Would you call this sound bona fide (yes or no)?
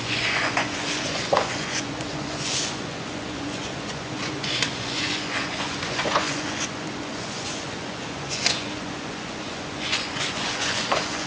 no